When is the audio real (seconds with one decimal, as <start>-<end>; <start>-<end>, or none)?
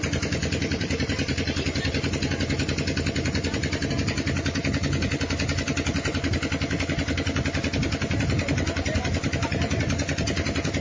0.0-0.4; 2.3-10.8